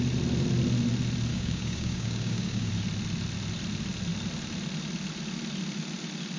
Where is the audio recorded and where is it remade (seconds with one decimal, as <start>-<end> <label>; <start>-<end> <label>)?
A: 0.0-1.3 recorded; 1.3-2.7 remade; 2.7-6.4 recorded